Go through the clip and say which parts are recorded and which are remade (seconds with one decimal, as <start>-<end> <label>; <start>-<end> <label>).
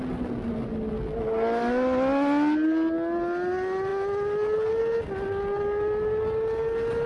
0.0-7.1 recorded